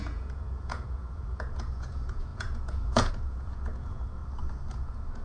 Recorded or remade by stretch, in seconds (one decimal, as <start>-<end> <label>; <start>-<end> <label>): 0.0-4.2 remade; 4.2-4.7 recorded; 4.7-5.2 remade